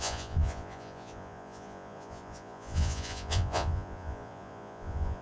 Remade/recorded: remade